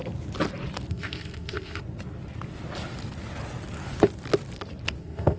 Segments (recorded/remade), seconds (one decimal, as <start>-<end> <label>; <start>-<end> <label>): 0.0-0.9 recorded; 0.9-1.8 remade; 1.8-5.0 recorded; 5.0-5.4 remade